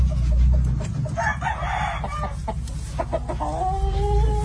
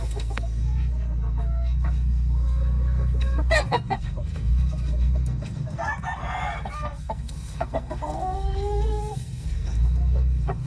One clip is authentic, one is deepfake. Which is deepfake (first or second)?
second